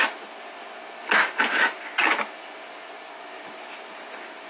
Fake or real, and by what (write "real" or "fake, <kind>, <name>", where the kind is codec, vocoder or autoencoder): real